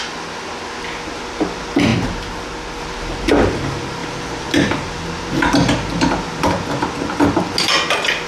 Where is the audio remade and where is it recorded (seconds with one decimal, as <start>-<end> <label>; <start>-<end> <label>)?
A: 0.0-4.0 recorded; 4.0-4.5 remade; 4.5-8.3 recorded